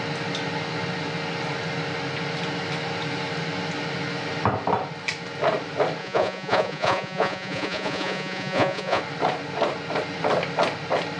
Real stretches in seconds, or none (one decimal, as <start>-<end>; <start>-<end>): 0.0-6.0; 9.0-11.2